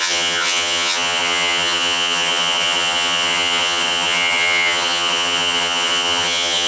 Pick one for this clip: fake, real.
fake